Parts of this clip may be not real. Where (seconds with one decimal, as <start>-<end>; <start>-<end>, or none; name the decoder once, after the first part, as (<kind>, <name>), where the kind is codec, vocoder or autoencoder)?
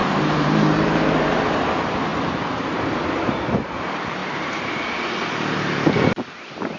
0.0-1.4 (vocoder, BigVGAN v2); 4.2-5.0